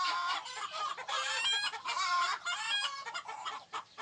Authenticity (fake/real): fake